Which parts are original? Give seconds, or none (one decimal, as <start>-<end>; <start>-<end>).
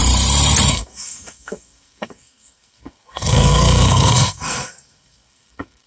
0.0-0.7